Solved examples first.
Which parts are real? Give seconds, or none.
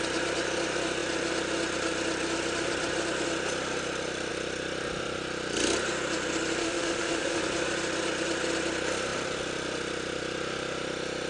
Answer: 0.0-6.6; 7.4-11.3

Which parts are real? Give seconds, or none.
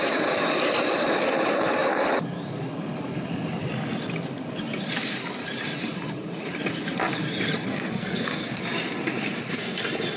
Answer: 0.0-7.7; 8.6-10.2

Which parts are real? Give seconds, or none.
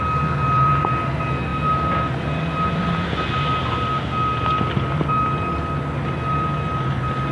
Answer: 0.0-7.3